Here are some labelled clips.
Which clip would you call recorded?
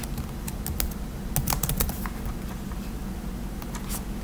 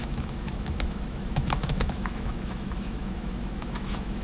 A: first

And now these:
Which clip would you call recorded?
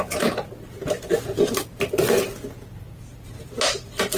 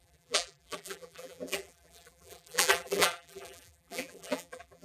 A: first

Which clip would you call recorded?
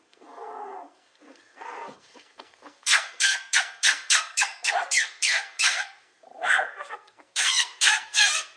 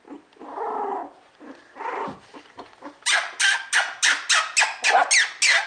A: second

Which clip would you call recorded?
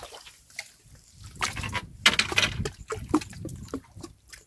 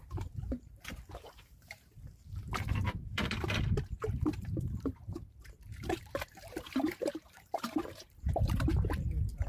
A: first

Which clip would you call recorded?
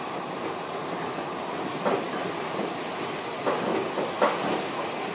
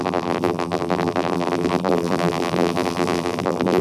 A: first